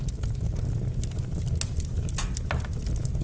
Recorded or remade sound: recorded